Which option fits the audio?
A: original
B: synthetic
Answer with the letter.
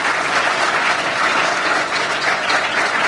B